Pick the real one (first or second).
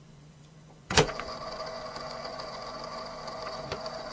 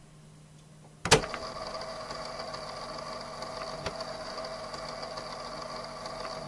second